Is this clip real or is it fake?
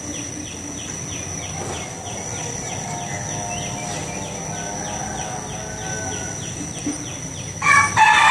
real